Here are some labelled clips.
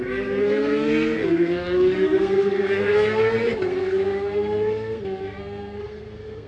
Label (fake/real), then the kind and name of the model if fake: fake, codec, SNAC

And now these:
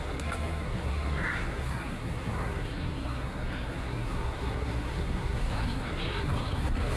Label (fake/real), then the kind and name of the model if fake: fake, codec, SNAC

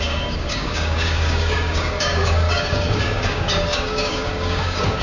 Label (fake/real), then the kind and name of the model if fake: fake, codec, DAC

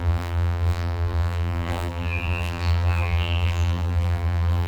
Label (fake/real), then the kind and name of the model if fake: fake, vocoder, BigVGAN v2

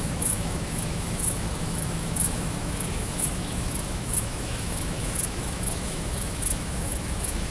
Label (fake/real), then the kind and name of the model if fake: fake, autoencoder, DAC-VAE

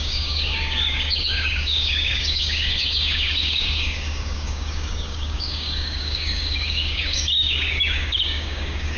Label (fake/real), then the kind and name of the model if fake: fake, codec, DAC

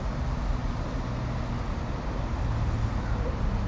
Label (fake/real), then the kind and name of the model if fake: real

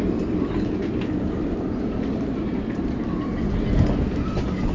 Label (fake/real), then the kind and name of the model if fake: real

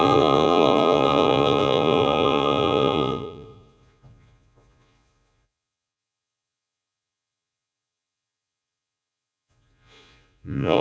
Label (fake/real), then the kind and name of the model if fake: fake, vocoder, Vocos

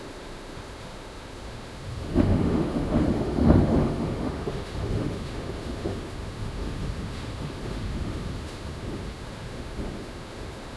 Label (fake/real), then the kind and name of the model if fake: fake, autoencoder, DAC-VAE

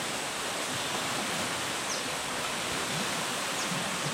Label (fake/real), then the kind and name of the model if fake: real